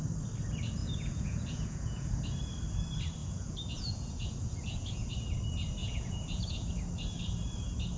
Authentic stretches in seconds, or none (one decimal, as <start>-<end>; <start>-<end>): 0.0-0.8; 2.2-3.2; 5.1-5.8; 6.7-8.0